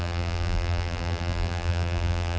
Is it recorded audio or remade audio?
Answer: remade